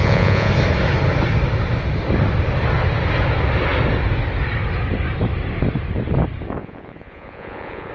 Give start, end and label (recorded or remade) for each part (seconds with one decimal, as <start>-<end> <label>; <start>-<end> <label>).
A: 0.0-0.5 remade; 0.5-6.6 recorded; 6.6-7.9 remade

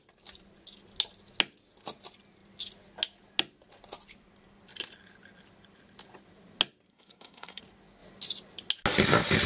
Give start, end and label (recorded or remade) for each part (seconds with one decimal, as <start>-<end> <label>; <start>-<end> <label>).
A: 0.0-6.9 recorded; 6.9-7.6 remade; 7.6-9.5 recorded

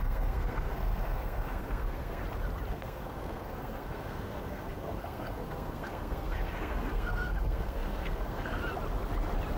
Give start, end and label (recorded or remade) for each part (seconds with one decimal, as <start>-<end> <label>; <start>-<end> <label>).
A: 0.0-2.2 remade; 2.2-2.7 recorded; 2.7-8.6 remade; 8.6-9.6 recorded